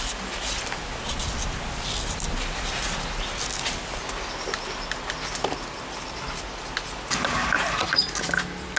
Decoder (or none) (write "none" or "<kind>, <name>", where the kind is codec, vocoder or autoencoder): none